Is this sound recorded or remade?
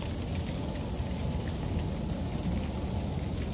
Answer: recorded